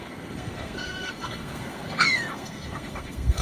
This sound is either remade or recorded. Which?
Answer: remade